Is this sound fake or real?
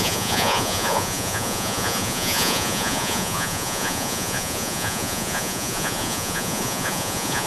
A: fake